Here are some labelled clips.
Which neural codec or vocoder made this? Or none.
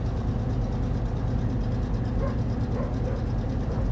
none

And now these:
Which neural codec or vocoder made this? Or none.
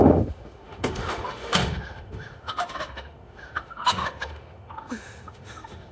autoencoder, DAC-VAE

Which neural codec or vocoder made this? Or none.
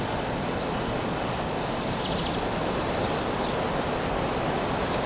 none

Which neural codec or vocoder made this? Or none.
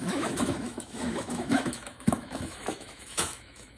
autoencoder, DAC-VAE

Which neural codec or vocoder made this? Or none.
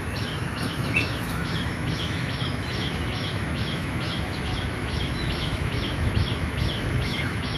autoencoder, DAC-VAE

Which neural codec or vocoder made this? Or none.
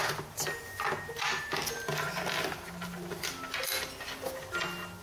none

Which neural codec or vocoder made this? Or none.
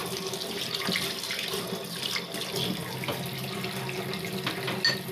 none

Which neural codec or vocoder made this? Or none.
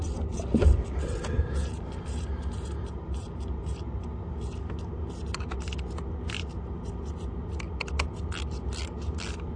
none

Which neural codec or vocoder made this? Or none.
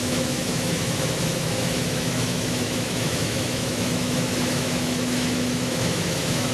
autoencoder, DAC-VAE